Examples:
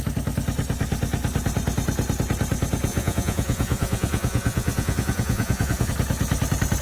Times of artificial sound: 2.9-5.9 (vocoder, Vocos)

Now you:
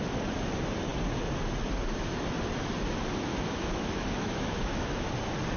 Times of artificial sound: 3.3-5.1 (autoencoder, DAC-VAE)

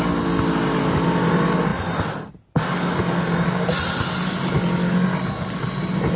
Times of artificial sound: none

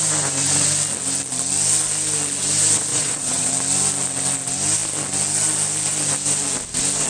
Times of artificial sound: 2.9-3.5 (vocoder, WaveNeXt)

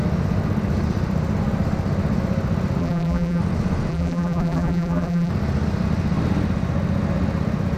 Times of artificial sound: 2.8-3.4 (vocoder, BigVGAN v2); 3.9-5.3